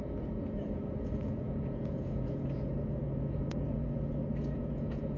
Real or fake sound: fake